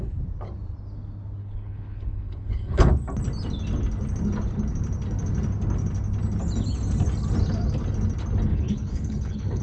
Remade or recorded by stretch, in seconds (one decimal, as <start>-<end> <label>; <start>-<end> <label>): 0.0-1.4 recorded; 1.4-2.9 remade; 2.9-8.5 recorded; 8.5-9.6 remade